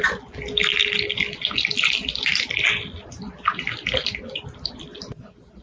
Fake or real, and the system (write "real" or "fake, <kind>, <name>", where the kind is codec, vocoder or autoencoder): real